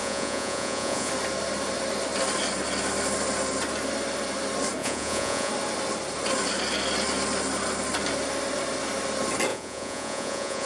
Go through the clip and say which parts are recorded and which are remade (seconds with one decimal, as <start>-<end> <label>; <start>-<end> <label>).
0.0-1.1 remade; 1.1-4.8 recorded; 4.8-5.5 remade; 5.5-9.5 recorded; 9.5-10.7 remade